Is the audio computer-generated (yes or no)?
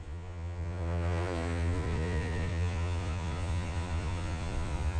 yes